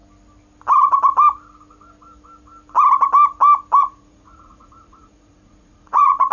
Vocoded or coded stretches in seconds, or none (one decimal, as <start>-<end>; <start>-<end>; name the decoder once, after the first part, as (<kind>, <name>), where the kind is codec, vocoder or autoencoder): 3.8-6.3 (vocoder, Vocos)